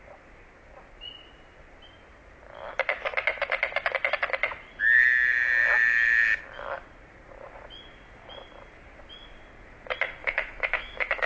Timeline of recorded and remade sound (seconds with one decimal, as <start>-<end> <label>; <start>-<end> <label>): 0.0-10.2 recorded; 10.2-11.3 remade